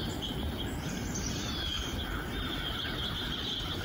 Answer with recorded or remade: recorded